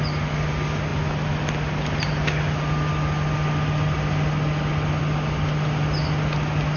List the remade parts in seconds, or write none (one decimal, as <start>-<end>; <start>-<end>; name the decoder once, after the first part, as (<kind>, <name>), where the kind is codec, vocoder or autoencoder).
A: none